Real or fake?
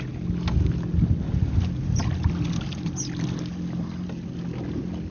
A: real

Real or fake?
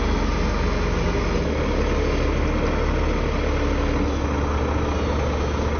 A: real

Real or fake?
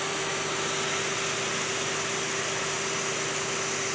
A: real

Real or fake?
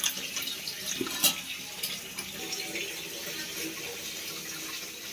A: real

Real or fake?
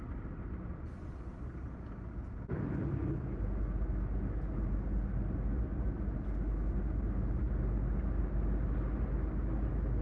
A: real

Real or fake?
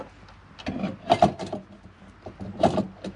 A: real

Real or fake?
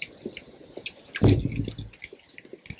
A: real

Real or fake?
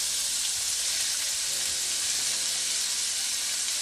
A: real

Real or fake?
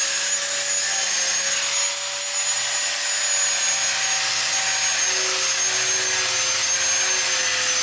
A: real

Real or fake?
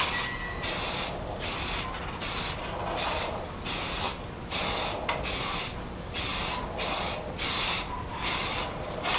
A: real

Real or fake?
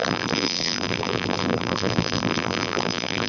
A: fake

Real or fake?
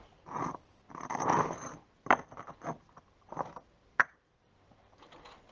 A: real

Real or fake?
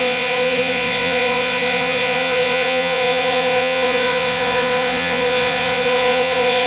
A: fake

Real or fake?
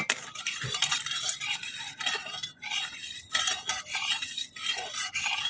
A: real